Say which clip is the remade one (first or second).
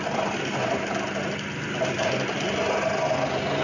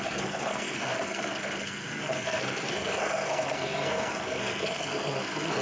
second